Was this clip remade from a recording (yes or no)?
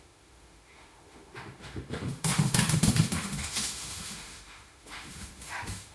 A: yes